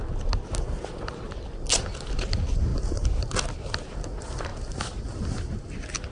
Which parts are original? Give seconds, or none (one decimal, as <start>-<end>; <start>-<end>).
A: 0.0-6.1